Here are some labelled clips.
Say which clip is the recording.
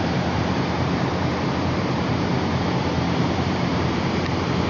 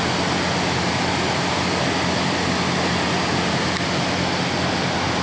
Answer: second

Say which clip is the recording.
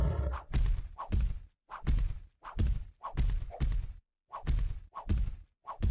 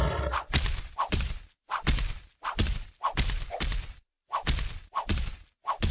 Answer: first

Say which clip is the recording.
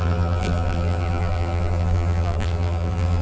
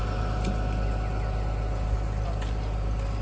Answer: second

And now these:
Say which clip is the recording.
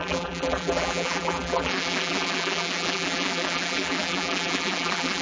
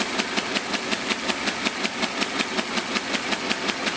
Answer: second